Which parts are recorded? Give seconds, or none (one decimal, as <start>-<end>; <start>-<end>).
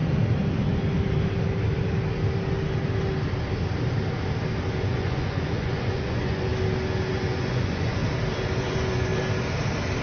0.0-4.8; 6.5-7.1; 8.0-8.6; 9.1-10.0